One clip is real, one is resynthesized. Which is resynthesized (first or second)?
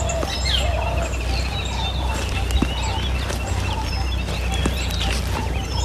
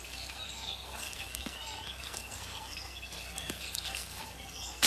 second